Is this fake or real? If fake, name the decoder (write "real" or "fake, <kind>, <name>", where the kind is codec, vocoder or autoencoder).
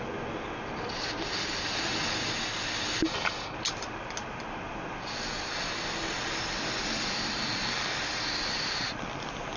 real